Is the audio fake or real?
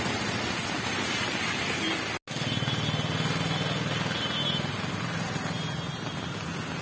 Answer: real